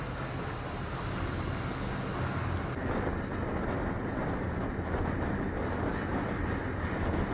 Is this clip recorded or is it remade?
recorded